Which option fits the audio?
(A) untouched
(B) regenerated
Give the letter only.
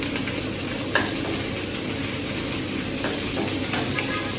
A